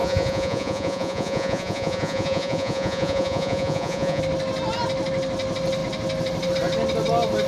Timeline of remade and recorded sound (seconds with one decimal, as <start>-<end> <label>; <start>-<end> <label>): 0.0-4.2 remade; 4.2-7.5 recorded